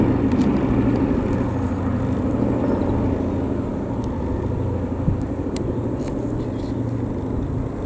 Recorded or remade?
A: recorded